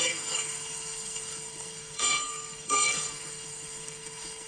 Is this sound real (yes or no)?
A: no